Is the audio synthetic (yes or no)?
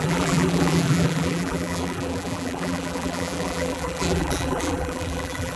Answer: yes